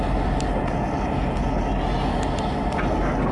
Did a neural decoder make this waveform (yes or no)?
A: no